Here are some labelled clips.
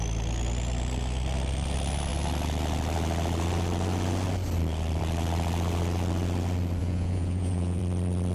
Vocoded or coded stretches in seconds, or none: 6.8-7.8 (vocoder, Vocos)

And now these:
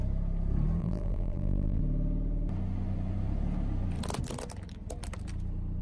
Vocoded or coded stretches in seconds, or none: 0.8-1.8 (vocoder, BigVGAN v2)

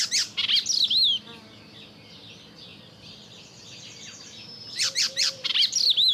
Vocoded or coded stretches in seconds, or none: 2.7-6.1 (vocoder, BigVGAN v2)

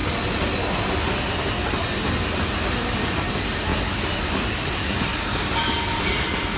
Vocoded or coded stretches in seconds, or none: 2.7-5.1 (vocoder, BigVGAN v2); 5.8-6.6

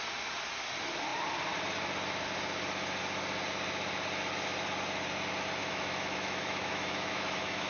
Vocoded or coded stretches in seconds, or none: 5.6-7.7 (autoencoder, DAC-VAE)

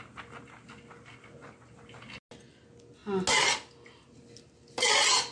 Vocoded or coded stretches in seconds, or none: none

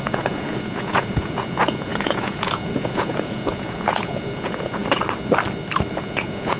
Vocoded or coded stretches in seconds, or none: 0.0-4.8 (vocoder, Vocos); 5.9-6.6

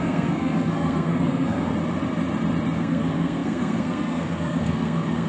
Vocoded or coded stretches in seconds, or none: 0.0-1.7 (codec, SNAC); 2.8-5.3